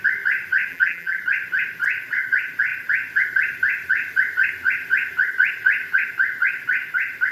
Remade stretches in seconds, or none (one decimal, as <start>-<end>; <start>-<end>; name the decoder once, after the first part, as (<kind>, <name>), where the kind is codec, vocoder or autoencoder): 0.7-1.2 (vocoder, BigVGAN v2)